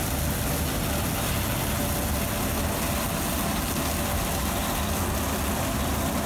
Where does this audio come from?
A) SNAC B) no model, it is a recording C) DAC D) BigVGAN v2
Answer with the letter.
B